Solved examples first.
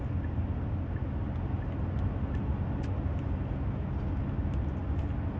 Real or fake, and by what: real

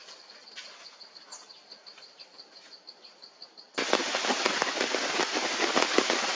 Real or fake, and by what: real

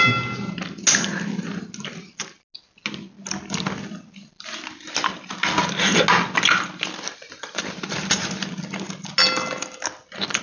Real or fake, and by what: real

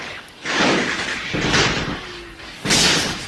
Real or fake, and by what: fake, codec, DAC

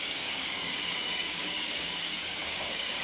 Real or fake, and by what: fake, codec, DAC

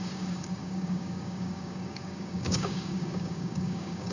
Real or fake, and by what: fake, codec, DAC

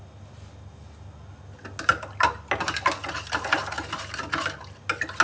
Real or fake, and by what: real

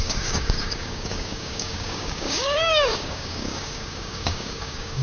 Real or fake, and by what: fake, codec, DAC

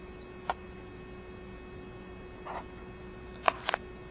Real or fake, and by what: real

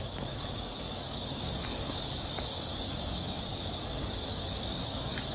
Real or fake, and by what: fake, codec, DAC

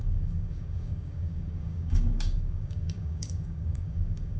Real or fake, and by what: fake, codec, DAC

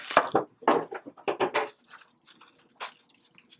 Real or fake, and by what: real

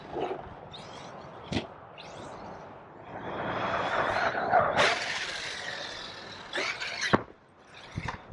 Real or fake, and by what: real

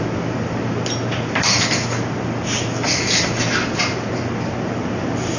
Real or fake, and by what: real